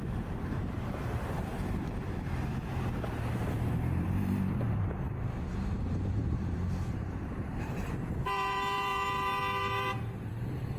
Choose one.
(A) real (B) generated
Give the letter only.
B